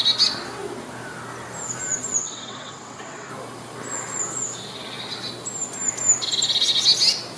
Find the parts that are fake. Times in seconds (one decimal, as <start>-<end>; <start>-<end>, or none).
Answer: 2.2-3.3